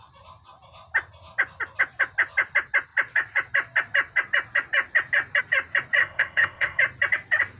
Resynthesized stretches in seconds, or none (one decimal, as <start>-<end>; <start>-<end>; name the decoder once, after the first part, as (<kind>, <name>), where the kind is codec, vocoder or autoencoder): 6.0-6.8 (codec, ZipCodec)